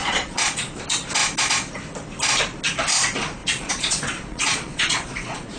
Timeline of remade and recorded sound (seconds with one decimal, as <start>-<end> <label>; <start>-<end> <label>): 0.0-0.7 remade; 0.7-3.4 recorded; 3.4-5.6 remade